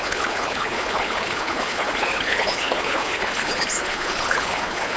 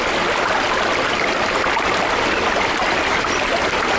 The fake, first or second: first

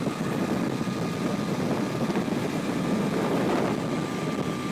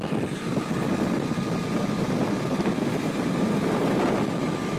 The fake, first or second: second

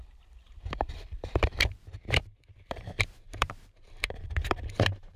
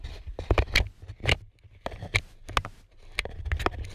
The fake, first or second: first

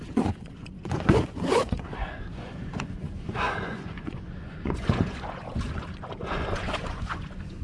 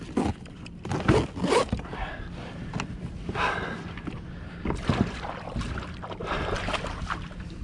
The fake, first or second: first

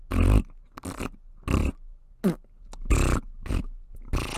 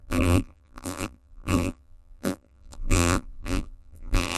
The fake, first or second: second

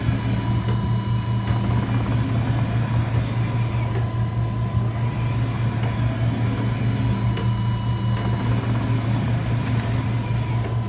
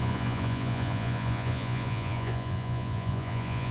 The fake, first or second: second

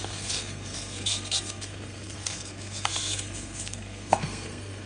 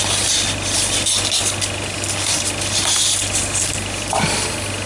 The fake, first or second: first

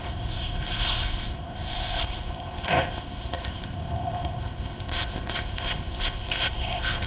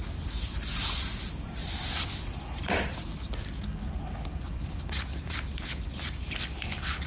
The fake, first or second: first